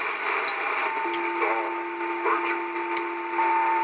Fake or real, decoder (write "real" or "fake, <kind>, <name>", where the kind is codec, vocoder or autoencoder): real